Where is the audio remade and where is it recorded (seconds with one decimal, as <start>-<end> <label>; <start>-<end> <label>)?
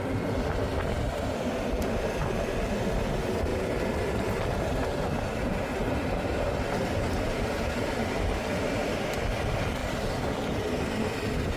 0.0-5.8 recorded; 5.8-7.9 remade; 7.9-11.6 recorded